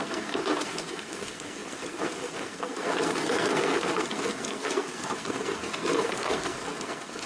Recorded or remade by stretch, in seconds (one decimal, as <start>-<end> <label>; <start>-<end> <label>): 0.0-7.3 remade